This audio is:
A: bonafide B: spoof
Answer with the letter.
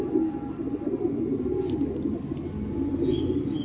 A